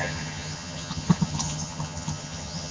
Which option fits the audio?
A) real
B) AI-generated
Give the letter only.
B